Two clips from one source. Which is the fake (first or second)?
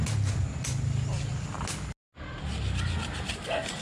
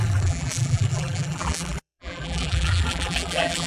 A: second